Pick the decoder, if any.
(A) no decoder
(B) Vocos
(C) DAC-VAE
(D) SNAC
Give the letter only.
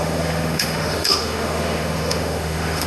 C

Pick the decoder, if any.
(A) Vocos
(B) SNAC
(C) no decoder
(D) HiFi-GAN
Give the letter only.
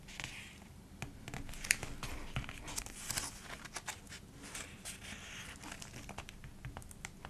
C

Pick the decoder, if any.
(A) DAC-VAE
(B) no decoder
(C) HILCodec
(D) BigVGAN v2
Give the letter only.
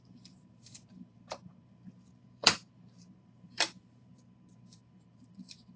D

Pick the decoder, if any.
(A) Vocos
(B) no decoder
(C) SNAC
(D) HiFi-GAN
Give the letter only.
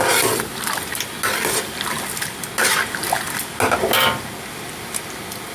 B